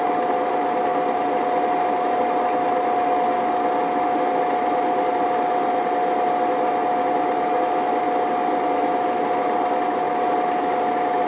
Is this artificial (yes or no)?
no